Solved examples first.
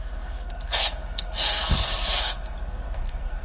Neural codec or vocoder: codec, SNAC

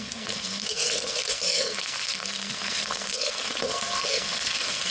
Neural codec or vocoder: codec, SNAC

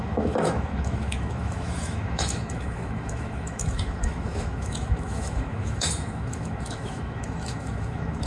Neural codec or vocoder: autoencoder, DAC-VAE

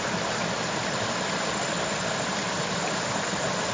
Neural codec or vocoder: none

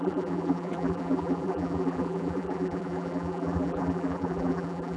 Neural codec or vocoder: vocoder, BigVGAN v2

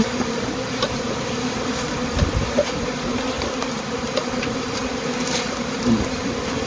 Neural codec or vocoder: vocoder, BigVGAN v2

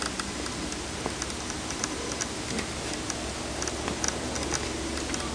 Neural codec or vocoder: none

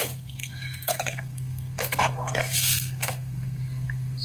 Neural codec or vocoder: codec, SNAC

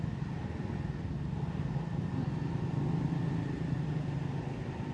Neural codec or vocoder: none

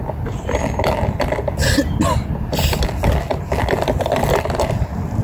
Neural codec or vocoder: none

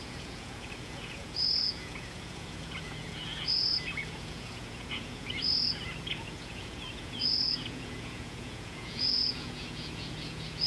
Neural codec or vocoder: vocoder, Vocos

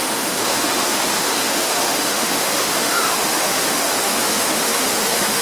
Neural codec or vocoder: autoencoder, DAC-VAE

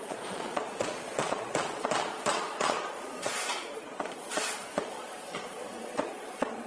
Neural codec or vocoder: vocoder, Vocos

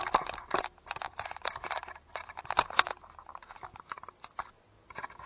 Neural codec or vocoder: none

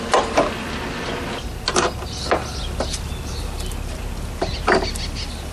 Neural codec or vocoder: none